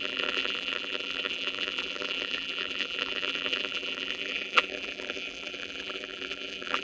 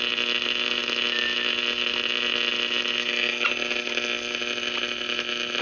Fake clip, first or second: first